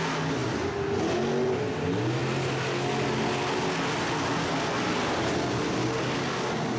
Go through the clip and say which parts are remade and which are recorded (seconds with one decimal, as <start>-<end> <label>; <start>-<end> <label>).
0.0-6.8 recorded